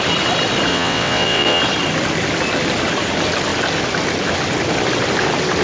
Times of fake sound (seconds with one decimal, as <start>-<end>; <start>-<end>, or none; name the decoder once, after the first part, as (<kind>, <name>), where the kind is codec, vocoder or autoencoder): 0.7-1.6 (vocoder, WaveNeXt)